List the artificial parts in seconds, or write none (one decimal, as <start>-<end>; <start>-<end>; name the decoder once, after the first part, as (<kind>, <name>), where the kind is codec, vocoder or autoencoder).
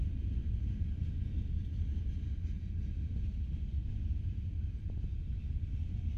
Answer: none